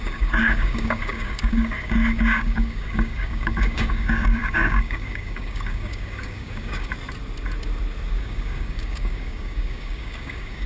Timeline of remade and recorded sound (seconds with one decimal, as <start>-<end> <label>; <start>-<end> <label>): 0.0-6.9 remade; 6.9-8.2 recorded; 8.2-10.7 remade